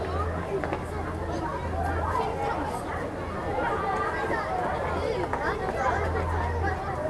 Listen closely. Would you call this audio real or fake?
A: real